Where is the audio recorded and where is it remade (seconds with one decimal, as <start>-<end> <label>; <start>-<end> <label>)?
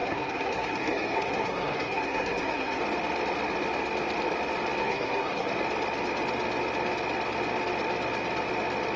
0.0-2.8 remade; 2.8-4.8 recorded; 4.8-5.5 remade; 5.5-9.0 recorded